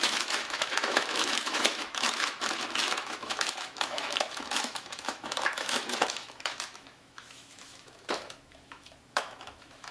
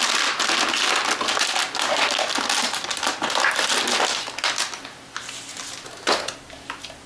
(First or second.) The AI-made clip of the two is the first